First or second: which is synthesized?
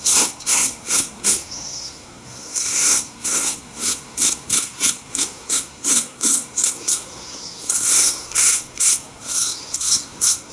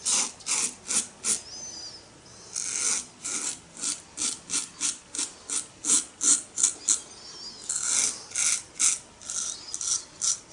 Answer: first